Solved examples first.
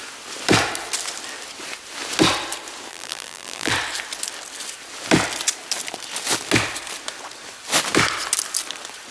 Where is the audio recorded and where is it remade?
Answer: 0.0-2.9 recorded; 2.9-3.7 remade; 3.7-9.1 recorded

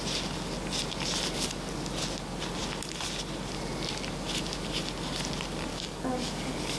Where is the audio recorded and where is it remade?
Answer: 0.0-5.7 recorded; 5.7-6.8 remade

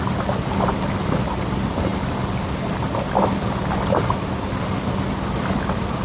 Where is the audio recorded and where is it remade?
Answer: 0.0-6.0 recorded